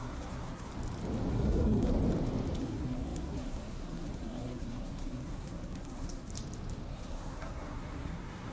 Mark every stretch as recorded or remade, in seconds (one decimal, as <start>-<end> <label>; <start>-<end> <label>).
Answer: 0.0-0.7 remade; 0.7-1.3 recorded; 1.3-1.9 remade; 1.9-2.6 recorded; 2.6-6.3 remade; 6.3-6.9 recorded; 6.9-8.5 remade